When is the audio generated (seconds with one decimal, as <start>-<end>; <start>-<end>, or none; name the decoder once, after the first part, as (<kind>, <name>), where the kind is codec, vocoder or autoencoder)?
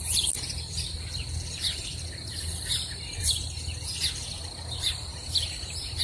0.0-5.1 (vocoder, BigVGAN v2)